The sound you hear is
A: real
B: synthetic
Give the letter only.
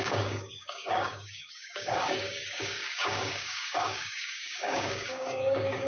B